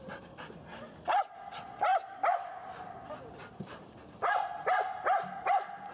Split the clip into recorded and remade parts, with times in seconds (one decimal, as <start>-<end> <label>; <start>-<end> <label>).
0.0-5.9 remade